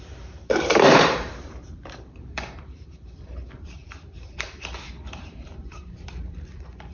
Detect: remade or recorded remade